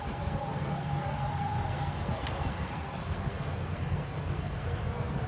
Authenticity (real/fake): fake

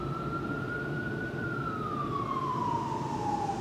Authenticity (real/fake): real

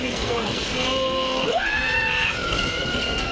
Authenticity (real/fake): fake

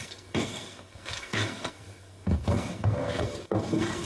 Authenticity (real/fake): fake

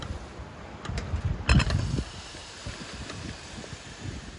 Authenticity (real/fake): real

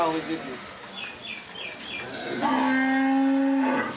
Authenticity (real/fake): real